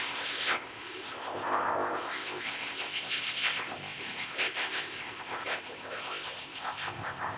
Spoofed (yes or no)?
yes